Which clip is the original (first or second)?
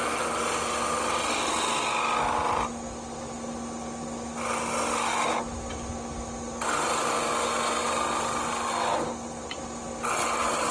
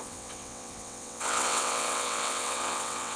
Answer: first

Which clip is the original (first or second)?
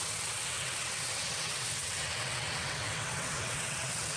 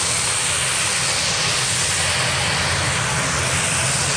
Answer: second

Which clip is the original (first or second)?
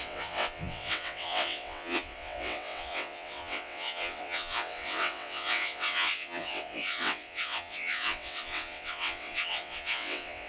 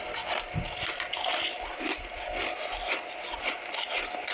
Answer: second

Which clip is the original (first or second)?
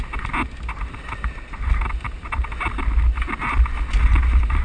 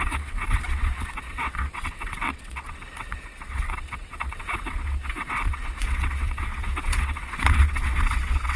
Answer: first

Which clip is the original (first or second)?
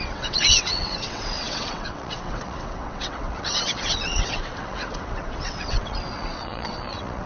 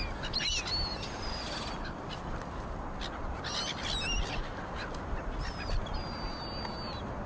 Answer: second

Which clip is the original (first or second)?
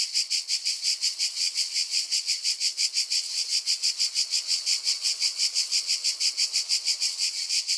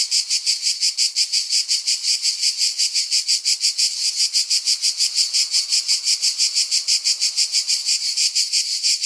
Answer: second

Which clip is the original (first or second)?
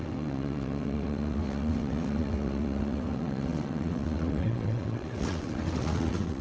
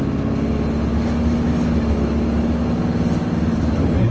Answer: second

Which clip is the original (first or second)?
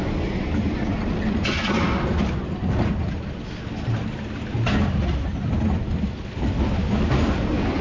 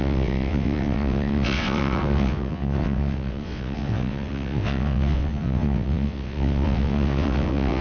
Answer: first